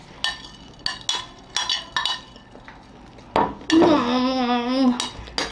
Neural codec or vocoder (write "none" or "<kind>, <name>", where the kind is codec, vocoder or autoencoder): none